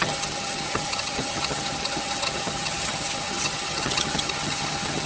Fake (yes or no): yes